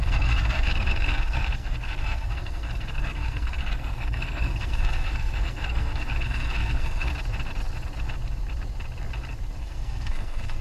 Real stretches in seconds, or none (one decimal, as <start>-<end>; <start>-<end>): 7.1-9.6